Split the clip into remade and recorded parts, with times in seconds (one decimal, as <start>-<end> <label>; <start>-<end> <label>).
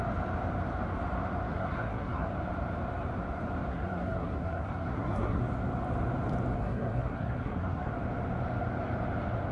0.0-1.5 recorded; 1.5-2.3 remade; 2.3-3.7 recorded; 3.7-5.4 remade; 5.4-6.6 recorded; 6.6-7.9 remade; 7.9-9.5 recorded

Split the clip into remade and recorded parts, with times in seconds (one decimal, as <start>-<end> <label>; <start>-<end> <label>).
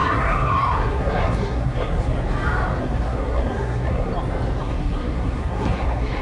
0.0-2.1 remade; 2.1-2.8 recorded; 2.8-4.1 remade; 4.1-4.6 recorded; 4.6-6.2 remade